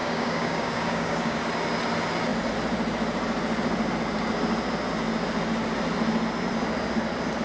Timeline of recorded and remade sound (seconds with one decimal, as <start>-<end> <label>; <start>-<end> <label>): 0.0-1.4 remade; 1.4-7.4 recorded